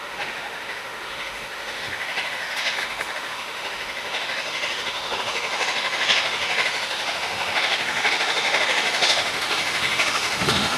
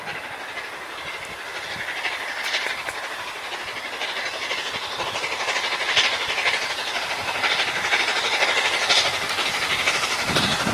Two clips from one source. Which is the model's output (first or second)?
first